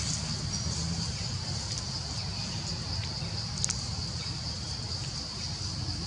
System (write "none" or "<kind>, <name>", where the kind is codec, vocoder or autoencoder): none